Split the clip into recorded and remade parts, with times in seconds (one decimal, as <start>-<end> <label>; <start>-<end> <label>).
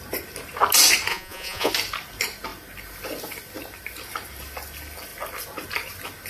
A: 0.0-1.1 recorded; 1.1-1.7 remade; 1.7-6.3 recorded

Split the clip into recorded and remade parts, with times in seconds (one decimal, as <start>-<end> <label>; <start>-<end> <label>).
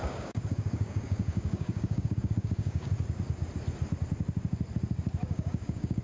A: 0.0-2.9 remade; 2.9-5.2 recorded; 5.2-6.0 remade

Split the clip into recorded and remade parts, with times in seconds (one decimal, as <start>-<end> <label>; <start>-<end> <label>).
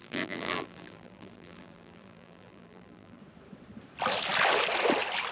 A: 0.0-3.2 remade; 3.2-5.3 recorded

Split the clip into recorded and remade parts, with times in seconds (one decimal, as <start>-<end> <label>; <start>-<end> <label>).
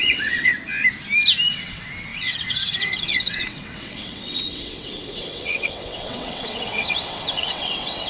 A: 0.0-0.5 remade; 0.5-1.5 recorded; 1.5-8.1 remade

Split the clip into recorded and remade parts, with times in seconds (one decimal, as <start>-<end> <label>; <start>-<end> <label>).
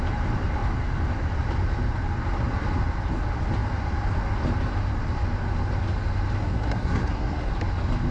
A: 0.0-6.4 recorded; 6.4-7.5 remade; 7.5-8.1 recorded